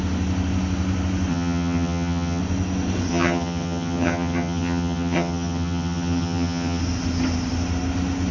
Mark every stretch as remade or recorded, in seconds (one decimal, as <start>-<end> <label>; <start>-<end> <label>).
0.0-1.3 recorded; 1.3-2.4 remade; 2.4-3.1 recorded; 3.1-6.8 remade; 6.8-8.3 recorded